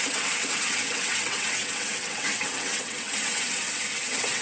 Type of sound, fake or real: fake